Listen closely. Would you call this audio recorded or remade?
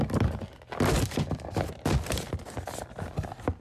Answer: recorded